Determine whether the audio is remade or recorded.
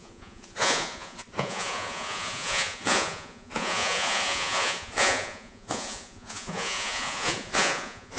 remade